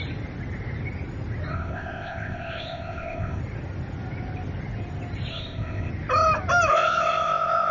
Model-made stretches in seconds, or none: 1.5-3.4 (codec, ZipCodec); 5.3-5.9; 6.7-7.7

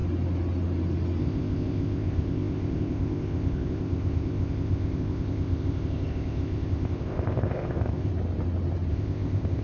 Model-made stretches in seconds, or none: 1.2-8.1 (codec, ZipCodec); 8.9-9.6

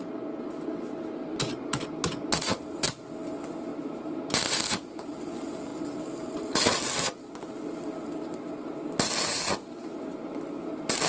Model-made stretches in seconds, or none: none

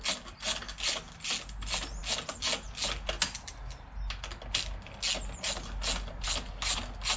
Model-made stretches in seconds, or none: none

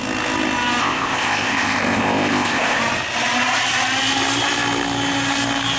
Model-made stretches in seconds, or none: 0.8-2.8 (codec, ZipCodec)